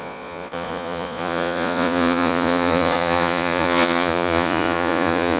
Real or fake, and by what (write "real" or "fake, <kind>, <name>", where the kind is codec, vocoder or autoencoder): fake, vocoder, Vocos